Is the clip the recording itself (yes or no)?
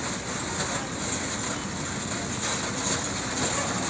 yes